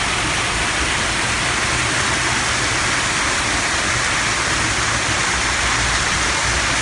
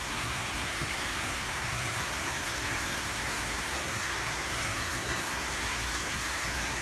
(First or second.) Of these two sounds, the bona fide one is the first